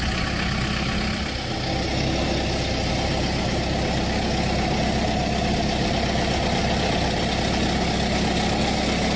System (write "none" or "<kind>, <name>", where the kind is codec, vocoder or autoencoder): none